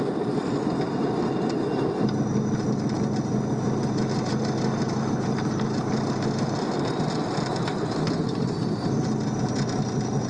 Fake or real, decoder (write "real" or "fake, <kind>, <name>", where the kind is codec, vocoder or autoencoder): real